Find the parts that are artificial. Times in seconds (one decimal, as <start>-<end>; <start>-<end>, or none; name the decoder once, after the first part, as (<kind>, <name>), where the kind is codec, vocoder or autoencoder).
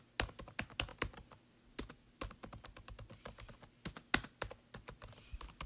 none